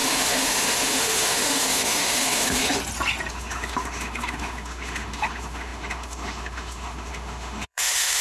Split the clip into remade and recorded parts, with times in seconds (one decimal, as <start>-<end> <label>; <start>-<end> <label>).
0.0-2.8 remade; 2.8-3.3 recorded; 3.3-8.2 remade